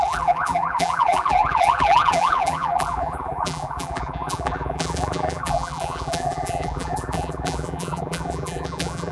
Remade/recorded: remade